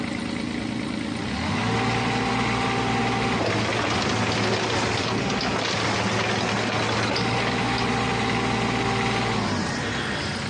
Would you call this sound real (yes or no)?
yes